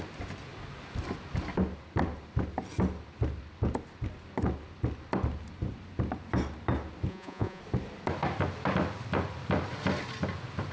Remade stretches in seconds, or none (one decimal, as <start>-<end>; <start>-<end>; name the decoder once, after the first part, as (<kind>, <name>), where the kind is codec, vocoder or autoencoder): 7.1-7.6 (vocoder, Vocos)